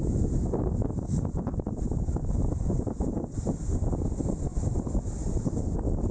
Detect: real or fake real